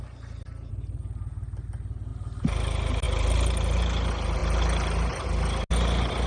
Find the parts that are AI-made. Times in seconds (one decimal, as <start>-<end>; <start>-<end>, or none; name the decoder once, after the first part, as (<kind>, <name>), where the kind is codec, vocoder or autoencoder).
none